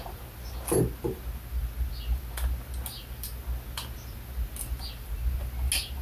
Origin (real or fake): real